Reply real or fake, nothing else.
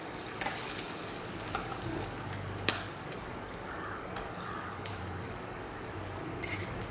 fake